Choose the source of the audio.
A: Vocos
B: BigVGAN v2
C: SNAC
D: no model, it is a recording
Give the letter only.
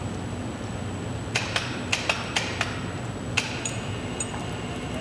B